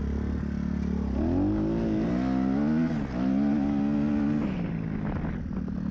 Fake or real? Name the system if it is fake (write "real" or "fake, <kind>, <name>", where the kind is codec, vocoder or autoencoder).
real